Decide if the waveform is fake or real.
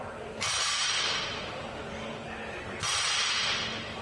real